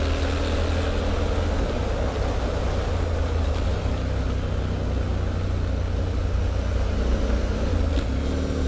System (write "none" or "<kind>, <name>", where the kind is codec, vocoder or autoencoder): none